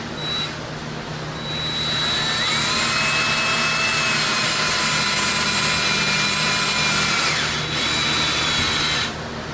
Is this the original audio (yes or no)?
yes